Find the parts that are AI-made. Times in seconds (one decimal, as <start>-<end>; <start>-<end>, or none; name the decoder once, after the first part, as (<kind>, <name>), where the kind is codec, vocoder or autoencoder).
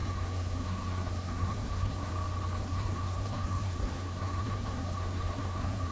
0.0-2.1 (codec, SNAC); 2.6-5.9